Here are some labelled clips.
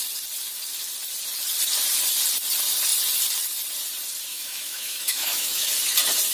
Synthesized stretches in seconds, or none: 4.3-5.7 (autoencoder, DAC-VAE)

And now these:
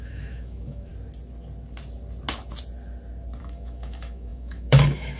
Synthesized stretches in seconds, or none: 0.0-0.9 (autoencoder, DAC-VAE); 3.4-5.2

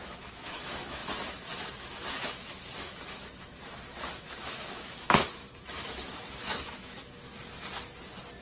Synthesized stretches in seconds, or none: 0.0-7.3 (autoencoder, DAC-VAE)

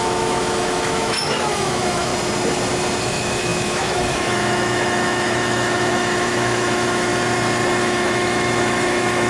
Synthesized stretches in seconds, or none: 0.0-2.1 (autoencoder, DAC-VAE); 3.0-7.1; 7.8-9.3

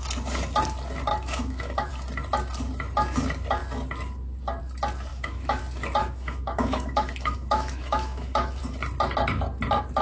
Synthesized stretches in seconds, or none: 1.1-1.9 (autoencoder, DAC-VAE); 5.1-5.6; 6.0-8.6

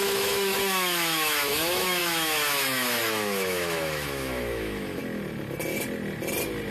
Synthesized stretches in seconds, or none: 0.0-5.0 (autoencoder, DAC-VAE)

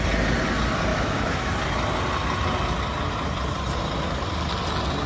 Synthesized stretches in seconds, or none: 0.9-1.5 (autoencoder, DAC-VAE)

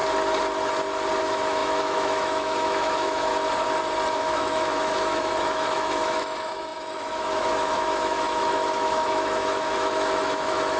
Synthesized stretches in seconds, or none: 1.2-3.3 (autoencoder, DAC-VAE); 4.1-10.8